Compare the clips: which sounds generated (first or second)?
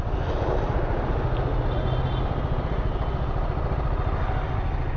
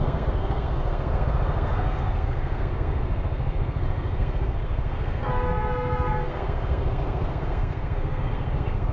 second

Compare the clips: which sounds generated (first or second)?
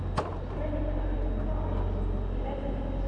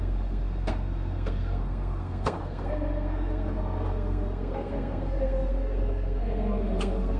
second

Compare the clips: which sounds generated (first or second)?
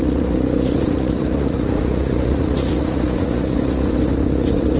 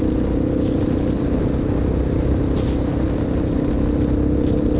first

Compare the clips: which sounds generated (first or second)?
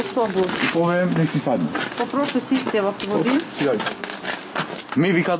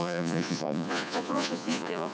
second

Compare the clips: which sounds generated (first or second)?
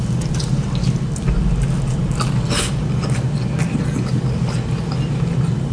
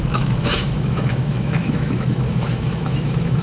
second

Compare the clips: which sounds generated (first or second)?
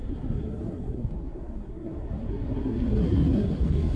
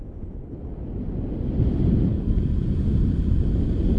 first